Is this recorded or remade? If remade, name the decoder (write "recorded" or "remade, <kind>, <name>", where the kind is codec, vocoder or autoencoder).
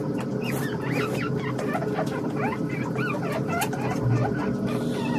recorded